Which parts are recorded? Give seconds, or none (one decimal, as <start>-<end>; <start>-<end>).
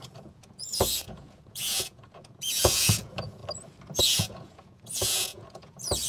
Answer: 3.4-4.0